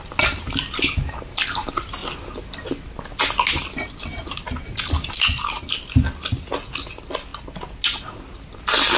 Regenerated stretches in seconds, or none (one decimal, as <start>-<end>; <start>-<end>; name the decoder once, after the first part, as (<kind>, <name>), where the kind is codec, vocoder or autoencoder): none